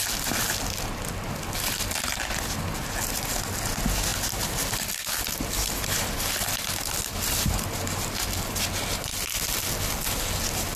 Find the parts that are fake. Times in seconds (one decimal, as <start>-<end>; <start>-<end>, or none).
none